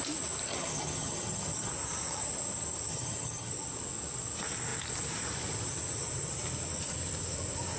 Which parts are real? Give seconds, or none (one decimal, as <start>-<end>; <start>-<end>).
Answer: 0.0-0.5; 1.7-2.9; 3.5-7.8